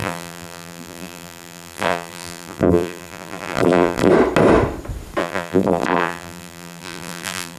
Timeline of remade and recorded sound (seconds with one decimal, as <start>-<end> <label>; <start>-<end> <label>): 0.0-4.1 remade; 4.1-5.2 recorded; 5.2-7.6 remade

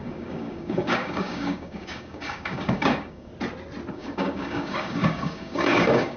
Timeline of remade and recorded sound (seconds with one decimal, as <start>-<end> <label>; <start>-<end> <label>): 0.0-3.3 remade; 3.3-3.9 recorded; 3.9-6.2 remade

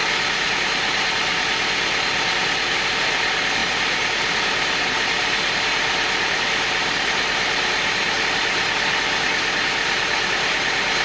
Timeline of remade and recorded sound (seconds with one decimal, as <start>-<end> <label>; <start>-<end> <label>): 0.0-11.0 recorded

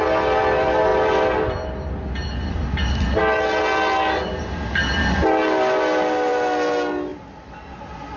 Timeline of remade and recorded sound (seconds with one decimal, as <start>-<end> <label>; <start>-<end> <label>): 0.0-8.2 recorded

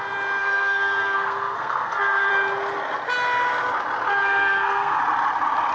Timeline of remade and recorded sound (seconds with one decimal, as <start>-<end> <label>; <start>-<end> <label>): 0.0-0.4 recorded; 0.4-2.3 remade; 2.3-4.1 recorded; 4.1-5.0 remade; 5.0-5.7 recorded

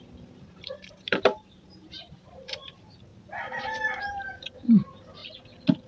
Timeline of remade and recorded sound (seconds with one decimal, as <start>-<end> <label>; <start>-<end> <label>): 0.0-3.1 remade; 3.1-4.0 recorded; 4.0-5.2 remade; 5.2-5.9 recorded

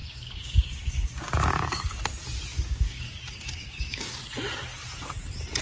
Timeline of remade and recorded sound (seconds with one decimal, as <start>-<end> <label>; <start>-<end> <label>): 0.0-1.9 remade; 1.9-2.5 recorded; 2.5-4.2 remade; 4.2-5.6 recorded

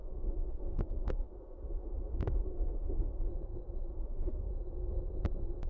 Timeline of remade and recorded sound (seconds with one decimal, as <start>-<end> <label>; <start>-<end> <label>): 0.0-3.3 remade; 3.3-3.9 recorded; 3.9-4.5 remade; 4.5-5.7 recorded